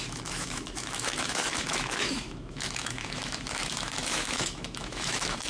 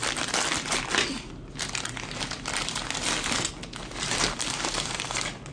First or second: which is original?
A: second